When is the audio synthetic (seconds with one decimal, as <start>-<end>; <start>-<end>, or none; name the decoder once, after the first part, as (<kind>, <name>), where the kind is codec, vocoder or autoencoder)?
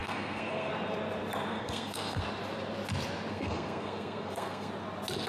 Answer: 0.0-0.7 (codec, SNAC); 1.5-2.2; 3.3-4.7